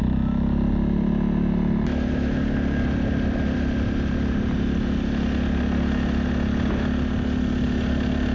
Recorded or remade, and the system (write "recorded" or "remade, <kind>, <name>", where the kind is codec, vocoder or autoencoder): recorded